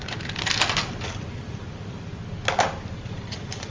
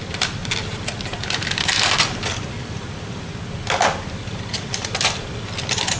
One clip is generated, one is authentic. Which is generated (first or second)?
second